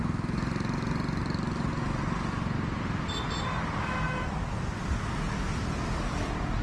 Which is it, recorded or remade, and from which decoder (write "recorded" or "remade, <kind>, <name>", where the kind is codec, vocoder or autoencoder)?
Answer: recorded